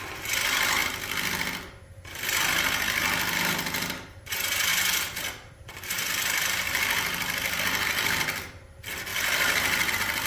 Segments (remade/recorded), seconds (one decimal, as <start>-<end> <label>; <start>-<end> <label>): 0.0-4.7 recorded; 4.7-7.6 remade; 7.6-9.1 recorded; 9.1-9.9 remade; 9.9-10.3 recorded